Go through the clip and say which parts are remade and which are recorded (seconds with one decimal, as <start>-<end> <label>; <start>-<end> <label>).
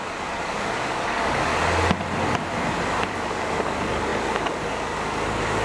0.0-1.5 remade; 1.5-3.0 recorded; 3.0-5.6 remade